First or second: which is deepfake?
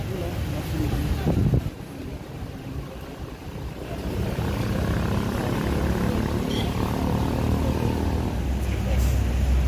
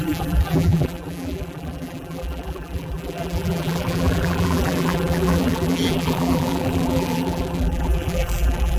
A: second